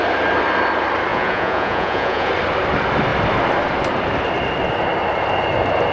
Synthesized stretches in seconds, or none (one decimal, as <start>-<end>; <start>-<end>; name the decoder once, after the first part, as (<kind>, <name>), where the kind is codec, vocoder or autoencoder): 1.1-2.3 (vocoder, Vocos)